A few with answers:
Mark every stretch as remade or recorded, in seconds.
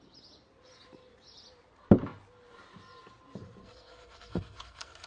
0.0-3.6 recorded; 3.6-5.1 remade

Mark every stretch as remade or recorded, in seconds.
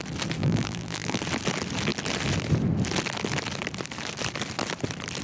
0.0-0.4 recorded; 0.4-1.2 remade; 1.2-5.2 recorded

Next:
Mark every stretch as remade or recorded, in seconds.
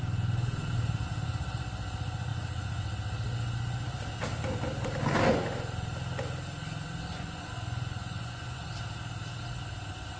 0.0-7.1 recorded; 7.1-8.7 remade; 8.7-10.2 recorded